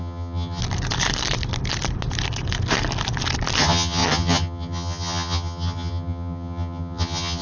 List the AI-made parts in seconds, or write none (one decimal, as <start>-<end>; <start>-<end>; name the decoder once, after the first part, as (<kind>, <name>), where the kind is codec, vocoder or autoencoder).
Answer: 0.0-0.6 (vocoder, HiFi-GAN); 3.6-7.4